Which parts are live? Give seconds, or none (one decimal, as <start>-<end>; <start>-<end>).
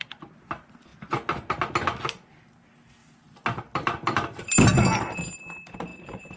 0.0-3.0; 4.7-6.4